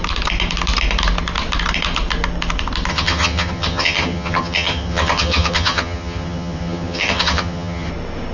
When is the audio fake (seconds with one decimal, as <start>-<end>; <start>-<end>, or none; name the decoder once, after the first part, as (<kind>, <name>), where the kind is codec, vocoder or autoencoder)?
2.9-7.9 (vocoder, HiFi-GAN)